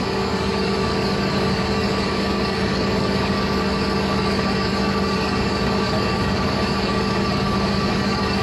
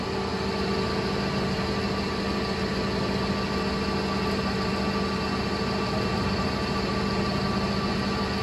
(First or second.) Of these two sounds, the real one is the second